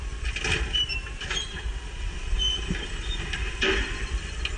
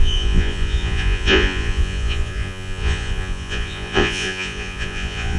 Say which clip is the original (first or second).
first